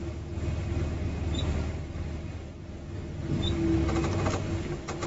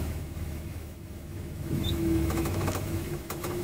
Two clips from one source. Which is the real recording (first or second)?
first